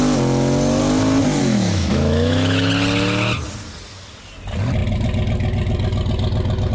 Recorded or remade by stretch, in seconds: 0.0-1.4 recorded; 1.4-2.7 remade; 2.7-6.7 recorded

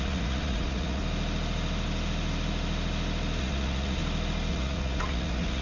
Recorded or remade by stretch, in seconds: 0.0-1.0 remade; 1.0-3.4 recorded; 3.4-4.0 remade; 4.0-4.5 recorded; 4.5-5.6 remade